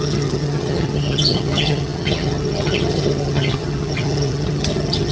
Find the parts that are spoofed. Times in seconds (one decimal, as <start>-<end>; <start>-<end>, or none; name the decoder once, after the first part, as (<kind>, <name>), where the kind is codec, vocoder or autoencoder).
0.0-5.1 (vocoder, HiFi-GAN)